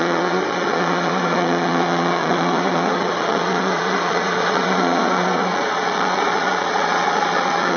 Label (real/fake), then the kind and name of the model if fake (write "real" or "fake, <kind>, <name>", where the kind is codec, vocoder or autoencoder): fake, vocoder, Vocos